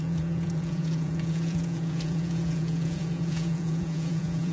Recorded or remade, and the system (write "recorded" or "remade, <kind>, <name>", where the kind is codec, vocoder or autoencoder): remade, vocoder, Vocos